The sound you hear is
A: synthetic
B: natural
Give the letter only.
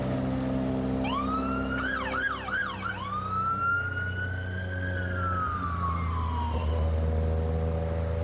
B